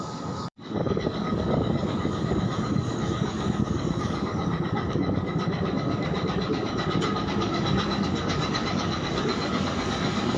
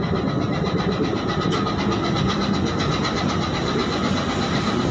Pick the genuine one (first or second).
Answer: second